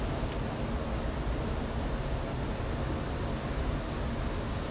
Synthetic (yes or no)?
no